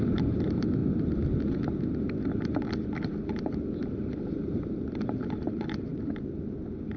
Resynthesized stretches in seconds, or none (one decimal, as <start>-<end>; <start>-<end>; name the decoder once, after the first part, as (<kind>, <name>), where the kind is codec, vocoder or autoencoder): none